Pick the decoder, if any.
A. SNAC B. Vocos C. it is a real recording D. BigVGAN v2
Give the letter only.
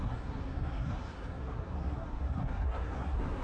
A